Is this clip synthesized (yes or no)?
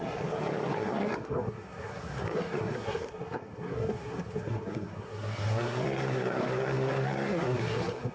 yes